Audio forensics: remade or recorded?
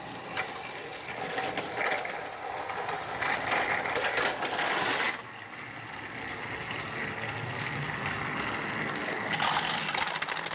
recorded